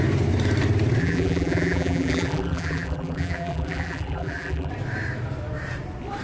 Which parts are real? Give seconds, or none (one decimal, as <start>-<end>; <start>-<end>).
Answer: 0.0-1.0; 4.7-6.2